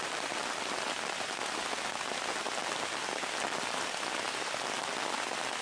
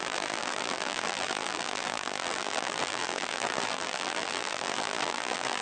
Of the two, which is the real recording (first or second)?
first